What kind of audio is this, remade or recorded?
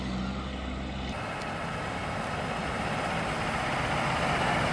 recorded